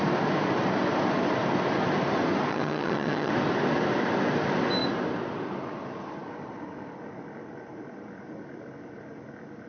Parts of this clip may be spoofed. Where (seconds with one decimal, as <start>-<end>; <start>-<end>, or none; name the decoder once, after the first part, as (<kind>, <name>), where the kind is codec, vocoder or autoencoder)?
2.5-3.3 (vocoder, HiFi-GAN)